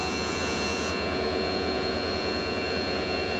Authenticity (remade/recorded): remade